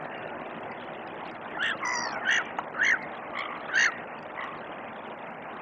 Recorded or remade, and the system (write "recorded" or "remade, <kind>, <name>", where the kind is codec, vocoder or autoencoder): recorded